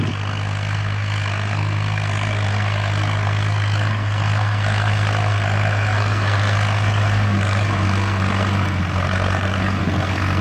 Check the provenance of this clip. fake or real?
fake